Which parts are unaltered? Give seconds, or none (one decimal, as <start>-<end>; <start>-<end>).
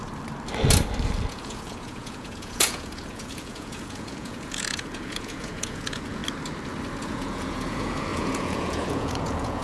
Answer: 0.0-1.3; 6.2-7.0